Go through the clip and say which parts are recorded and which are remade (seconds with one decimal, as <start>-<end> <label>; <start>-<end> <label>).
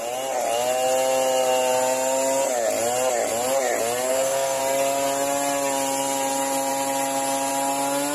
0.0-4.1 recorded; 4.1-4.6 remade; 4.6-8.1 recorded